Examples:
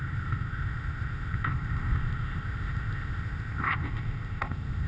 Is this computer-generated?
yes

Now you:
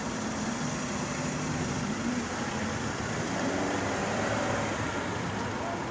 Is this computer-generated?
yes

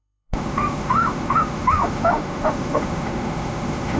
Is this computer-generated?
yes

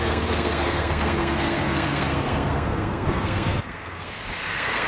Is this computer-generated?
yes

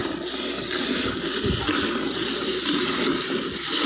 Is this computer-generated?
no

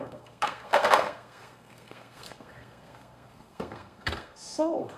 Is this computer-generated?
yes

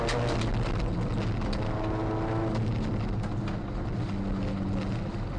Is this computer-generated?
no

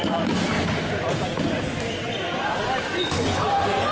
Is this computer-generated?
no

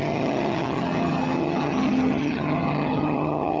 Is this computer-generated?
yes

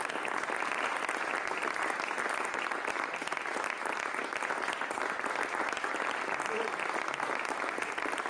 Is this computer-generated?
no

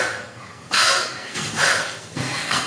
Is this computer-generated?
yes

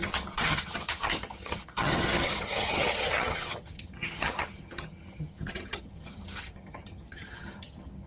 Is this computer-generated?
yes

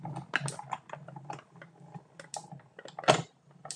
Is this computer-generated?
no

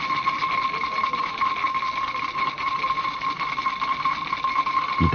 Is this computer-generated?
no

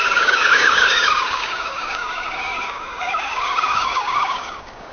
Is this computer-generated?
yes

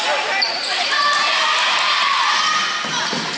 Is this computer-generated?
no